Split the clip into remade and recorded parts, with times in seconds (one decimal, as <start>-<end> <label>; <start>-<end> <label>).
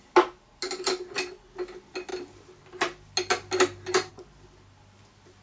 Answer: 0.0-5.4 recorded